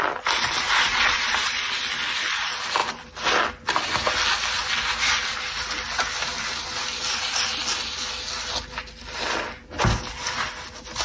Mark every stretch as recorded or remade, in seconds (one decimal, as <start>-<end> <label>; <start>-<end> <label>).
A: 0.0-0.7 recorded; 0.7-1.8 remade; 1.8-11.0 recorded

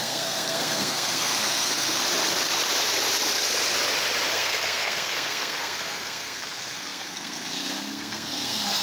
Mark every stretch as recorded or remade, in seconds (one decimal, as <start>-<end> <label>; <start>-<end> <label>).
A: 0.0-2.0 remade; 2.0-4.3 recorded; 4.3-8.8 remade

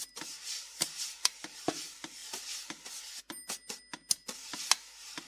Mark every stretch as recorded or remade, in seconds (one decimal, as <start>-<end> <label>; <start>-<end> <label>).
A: 0.0-2.2 remade; 2.2-5.3 recorded

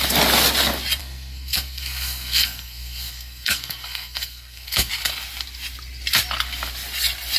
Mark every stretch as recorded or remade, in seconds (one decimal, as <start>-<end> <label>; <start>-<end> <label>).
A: 0.0-1.0 recorded; 1.0-4.9 remade; 4.9-7.4 recorded

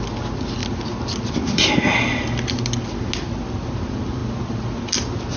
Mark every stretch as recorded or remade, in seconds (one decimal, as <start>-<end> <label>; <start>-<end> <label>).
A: 0.0-5.4 recorded

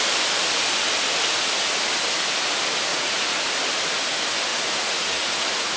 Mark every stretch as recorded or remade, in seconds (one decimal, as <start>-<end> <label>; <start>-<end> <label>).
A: 0.0-2.9 recorded; 2.9-3.5 remade; 3.5-4.5 recorded; 4.5-5.8 remade

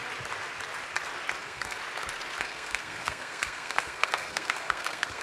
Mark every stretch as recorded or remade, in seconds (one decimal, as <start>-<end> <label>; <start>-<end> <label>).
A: 0.0-1.4 recorded; 1.4-1.8 remade; 1.8-2.4 recorded; 2.4-5.2 remade

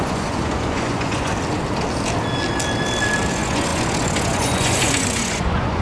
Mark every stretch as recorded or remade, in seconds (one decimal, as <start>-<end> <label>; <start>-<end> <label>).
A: 0.0-1.3 remade; 1.3-3.3 recorded; 3.3-5.8 remade